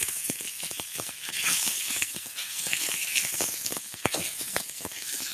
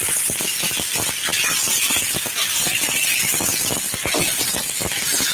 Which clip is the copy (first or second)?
first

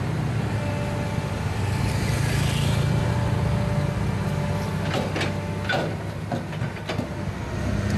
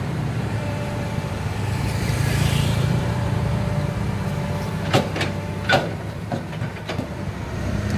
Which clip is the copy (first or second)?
second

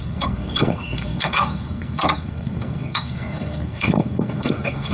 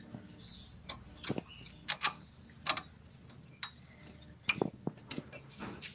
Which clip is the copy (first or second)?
first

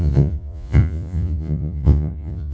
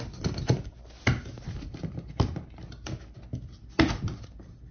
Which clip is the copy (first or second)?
first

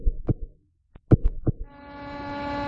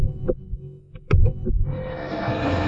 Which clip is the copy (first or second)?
second